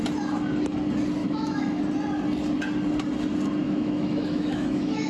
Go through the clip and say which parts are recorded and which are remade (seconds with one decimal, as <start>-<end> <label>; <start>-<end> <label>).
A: 0.0-1.2 recorded; 1.2-1.8 remade; 1.8-3.6 recorded; 3.6-5.1 remade